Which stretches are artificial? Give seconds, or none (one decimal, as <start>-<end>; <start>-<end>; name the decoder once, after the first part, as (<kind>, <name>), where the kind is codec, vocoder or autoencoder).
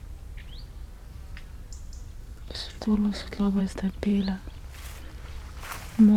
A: 2.2-3.6 (codec, SNAC)